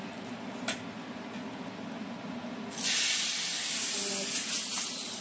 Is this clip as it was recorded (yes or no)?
yes